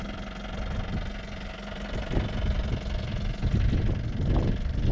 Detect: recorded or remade recorded